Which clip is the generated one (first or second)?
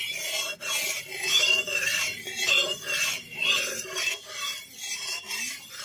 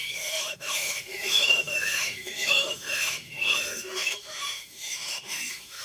second